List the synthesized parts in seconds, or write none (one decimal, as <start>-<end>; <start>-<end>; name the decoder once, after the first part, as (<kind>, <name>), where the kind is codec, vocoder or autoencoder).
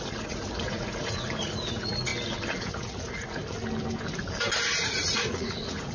0.0-2.1 (vocoder, Vocos); 2.6-3.4; 4.8-5.9